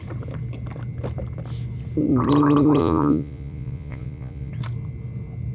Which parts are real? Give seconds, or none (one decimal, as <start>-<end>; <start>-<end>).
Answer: 0.0-2.8; 4.5-5.5